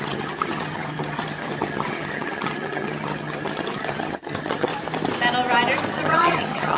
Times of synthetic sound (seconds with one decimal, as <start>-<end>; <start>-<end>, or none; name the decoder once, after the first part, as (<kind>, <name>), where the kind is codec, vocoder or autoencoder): 0.0-4.7 (vocoder, HiFi-GAN); 5.9-6.8